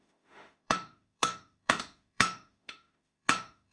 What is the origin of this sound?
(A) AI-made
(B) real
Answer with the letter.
A